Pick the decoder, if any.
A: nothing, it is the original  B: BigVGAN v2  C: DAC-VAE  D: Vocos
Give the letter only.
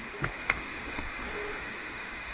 C